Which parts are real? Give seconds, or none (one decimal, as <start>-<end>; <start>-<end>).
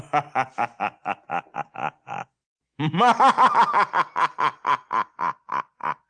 0.0-1.8; 2.8-6.1